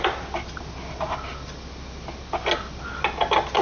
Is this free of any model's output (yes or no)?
yes